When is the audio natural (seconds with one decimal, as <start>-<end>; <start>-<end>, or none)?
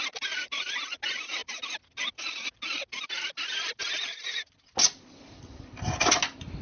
0.0-6.6